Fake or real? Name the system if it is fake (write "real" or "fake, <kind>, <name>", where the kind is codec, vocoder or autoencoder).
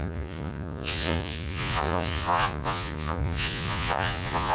fake, vocoder, Vocos